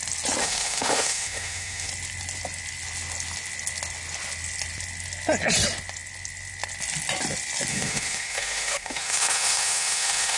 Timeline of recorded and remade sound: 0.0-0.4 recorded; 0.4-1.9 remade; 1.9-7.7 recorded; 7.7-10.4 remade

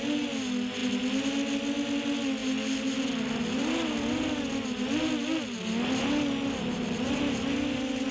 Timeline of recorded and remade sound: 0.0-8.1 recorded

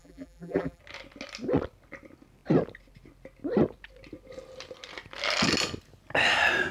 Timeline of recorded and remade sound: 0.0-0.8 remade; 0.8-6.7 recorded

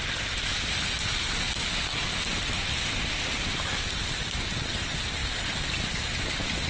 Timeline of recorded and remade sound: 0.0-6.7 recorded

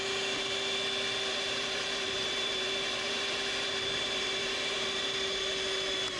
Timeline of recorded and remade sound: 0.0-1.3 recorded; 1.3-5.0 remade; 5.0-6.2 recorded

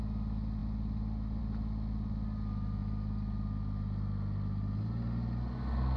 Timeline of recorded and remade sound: 0.0-6.0 recorded